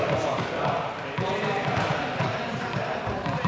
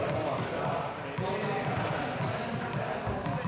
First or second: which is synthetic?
first